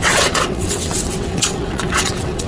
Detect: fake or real fake